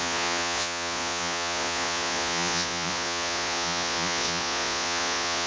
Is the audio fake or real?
fake